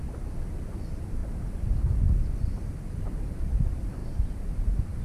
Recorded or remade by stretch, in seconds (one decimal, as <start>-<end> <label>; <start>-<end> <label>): 0.0-4.0 recorded; 4.0-5.0 remade